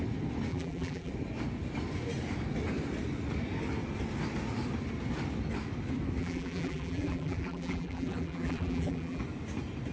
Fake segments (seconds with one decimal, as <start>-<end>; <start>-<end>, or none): 0.5-1.1; 6.2-9.2